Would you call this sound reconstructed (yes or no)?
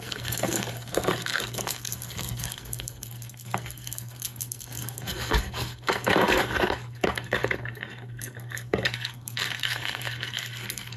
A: yes